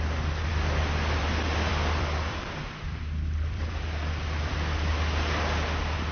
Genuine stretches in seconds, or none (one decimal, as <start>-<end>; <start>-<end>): 0.0-1.7; 4.5-6.1